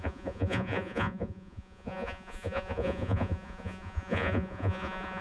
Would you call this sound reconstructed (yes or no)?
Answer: yes